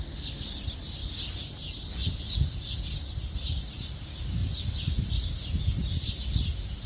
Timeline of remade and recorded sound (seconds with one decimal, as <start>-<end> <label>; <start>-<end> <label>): 0.0-6.9 recorded